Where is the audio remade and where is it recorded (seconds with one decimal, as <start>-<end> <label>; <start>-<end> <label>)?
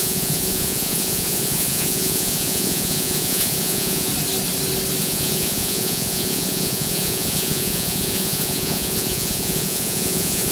0.0-4.1 remade; 4.1-5.0 recorded; 5.0-10.5 remade